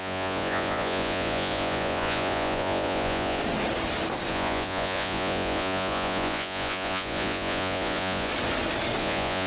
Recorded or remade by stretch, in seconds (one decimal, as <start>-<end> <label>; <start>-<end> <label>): 0.0-3.4 remade; 3.4-4.3 recorded; 4.3-8.3 remade; 8.3-9.0 recorded; 9.0-9.5 remade

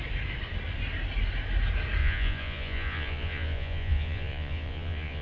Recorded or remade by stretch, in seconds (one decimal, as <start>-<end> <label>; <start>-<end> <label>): 0.0-2.0 recorded; 2.0-5.2 remade

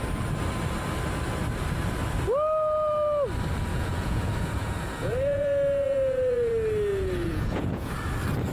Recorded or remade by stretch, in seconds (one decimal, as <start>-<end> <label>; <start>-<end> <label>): 0.0-3.7 recorded; 3.7-6.5 remade; 6.5-6.9 recorded; 6.9-7.9 remade; 7.9-8.5 recorded

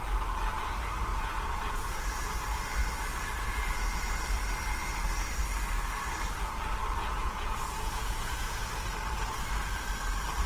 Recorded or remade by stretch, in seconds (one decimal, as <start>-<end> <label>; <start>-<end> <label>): 0.0-1.1 recorded; 1.1-2.4 remade; 2.4-7.2 recorded; 7.2-8.6 remade; 8.6-10.5 recorded